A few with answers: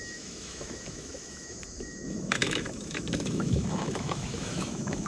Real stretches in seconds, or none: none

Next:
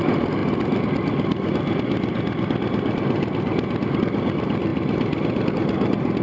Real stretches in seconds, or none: 0.0-6.2